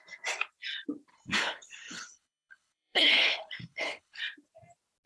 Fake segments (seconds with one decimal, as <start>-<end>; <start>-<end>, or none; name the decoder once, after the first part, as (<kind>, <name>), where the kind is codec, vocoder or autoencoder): 1.1-4.2 (codec, HILCodec)